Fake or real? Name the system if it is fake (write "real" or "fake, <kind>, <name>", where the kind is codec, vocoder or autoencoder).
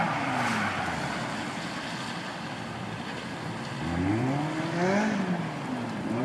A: real